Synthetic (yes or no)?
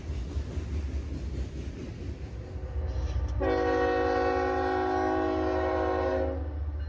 no